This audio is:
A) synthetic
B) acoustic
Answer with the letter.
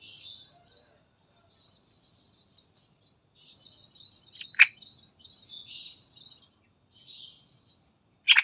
B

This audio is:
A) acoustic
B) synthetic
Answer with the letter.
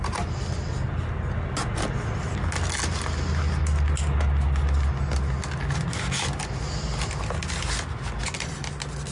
A